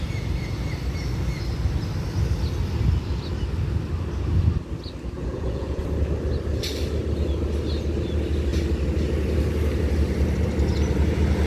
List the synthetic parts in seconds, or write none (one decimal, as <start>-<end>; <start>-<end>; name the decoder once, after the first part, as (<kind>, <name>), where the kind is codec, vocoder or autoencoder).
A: 5.2-5.8 (vocoder, Vocos)